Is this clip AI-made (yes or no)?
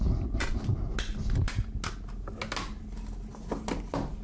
no